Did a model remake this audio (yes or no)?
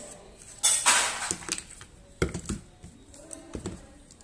no